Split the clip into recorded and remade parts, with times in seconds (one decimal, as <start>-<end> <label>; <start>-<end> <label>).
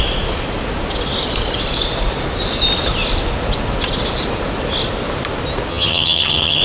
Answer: 0.0-5.7 recorded; 5.7-6.6 remade